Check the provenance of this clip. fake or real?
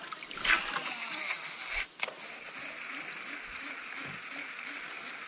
real